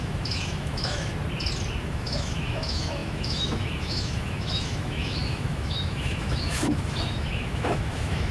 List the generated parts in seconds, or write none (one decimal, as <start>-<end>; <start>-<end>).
0.0-1.1; 1.8-8.3